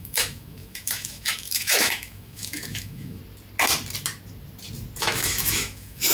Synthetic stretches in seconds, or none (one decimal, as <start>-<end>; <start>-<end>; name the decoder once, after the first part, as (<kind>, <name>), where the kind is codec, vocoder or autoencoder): 0.0-3.2 (autoencoder, DAC-VAE); 5.0-6.1